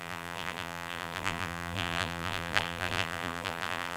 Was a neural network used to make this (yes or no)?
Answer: yes